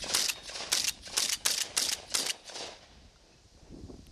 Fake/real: real